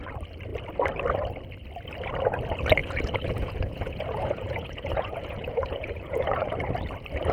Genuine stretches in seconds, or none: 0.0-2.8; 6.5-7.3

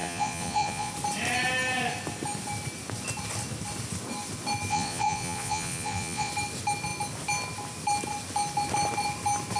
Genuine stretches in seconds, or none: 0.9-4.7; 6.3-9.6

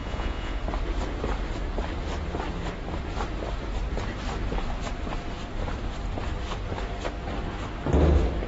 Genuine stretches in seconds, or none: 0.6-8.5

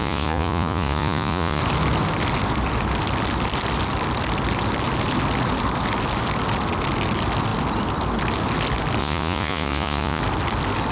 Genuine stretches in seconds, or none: 1.6-9.0; 10.2-10.9

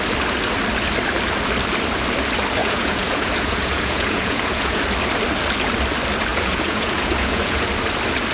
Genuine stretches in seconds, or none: 0.0-2.6; 4.8-6.3; 7.7-8.3